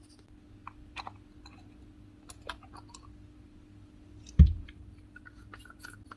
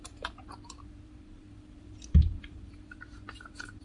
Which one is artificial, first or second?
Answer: second